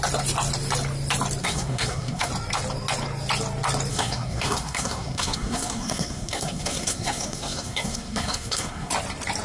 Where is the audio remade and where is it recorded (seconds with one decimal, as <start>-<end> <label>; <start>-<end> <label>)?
0.0-1.4 recorded; 1.4-2.3 remade; 2.3-3.9 recorded; 3.9-8.9 remade; 8.9-9.4 recorded